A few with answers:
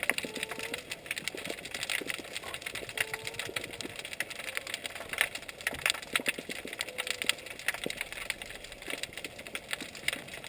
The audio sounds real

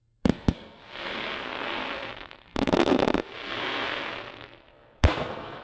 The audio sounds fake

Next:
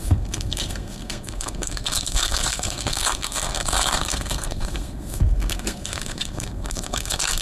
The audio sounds fake